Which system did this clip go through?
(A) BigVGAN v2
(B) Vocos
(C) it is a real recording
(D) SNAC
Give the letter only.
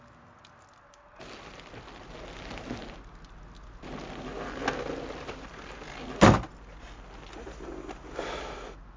C